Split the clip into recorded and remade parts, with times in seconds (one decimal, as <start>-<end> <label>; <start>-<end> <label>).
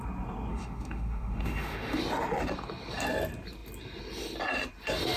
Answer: 0.0-0.5 recorded; 0.5-2.0 remade; 2.0-5.2 recorded